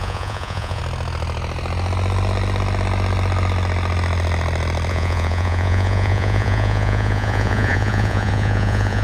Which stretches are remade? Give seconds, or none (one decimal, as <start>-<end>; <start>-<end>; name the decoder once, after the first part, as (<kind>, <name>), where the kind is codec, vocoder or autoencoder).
0.0-0.8 (vocoder, Vocos); 4.9-9.0